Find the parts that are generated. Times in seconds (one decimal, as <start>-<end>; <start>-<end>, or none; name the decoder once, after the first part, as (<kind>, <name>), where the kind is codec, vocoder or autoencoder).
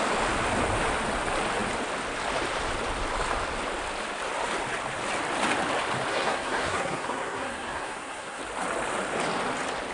6.1-8.4 (codec, SNAC)